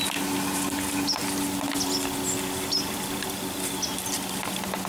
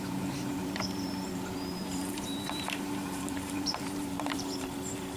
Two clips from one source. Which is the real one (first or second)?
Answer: first